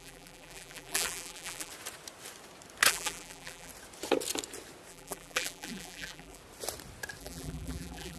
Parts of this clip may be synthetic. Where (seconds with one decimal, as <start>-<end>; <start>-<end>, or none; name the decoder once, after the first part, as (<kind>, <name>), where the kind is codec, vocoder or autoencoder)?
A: 0.0-1.7 (vocoder, BigVGAN v2); 2.9-3.7; 4.9-6.4; 7.2-8.2